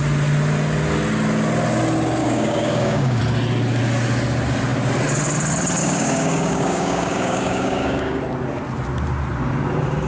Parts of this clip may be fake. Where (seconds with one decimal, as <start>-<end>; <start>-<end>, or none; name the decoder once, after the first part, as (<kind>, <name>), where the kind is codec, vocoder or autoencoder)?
2.2-3.2 (codec, DAC); 5.8-8.2